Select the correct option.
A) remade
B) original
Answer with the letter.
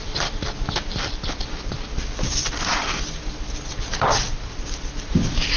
B